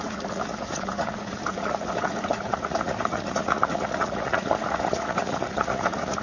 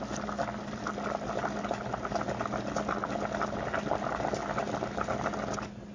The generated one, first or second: first